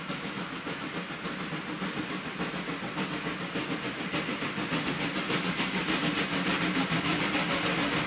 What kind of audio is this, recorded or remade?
recorded